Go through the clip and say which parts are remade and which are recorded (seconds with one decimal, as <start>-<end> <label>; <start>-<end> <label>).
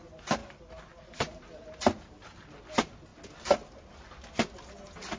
0.0-5.2 recorded